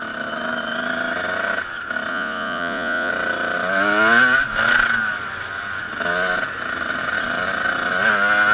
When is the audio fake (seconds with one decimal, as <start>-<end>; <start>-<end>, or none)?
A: 2.1-3.1